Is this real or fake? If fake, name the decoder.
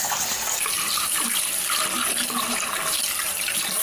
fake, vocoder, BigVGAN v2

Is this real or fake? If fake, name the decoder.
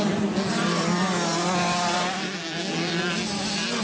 real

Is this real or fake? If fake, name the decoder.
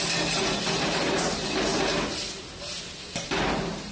real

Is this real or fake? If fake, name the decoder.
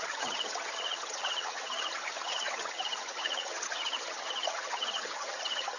fake, vocoder, HiFi-GAN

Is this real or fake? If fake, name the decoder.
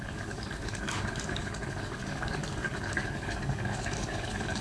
fake, codec, DAC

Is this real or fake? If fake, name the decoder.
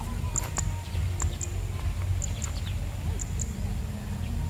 real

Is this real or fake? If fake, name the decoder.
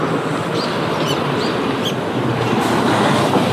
real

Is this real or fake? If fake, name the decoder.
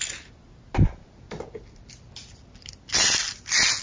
real